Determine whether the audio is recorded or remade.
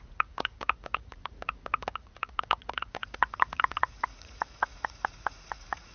remade